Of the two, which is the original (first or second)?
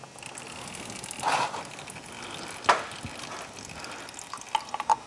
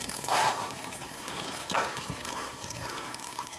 first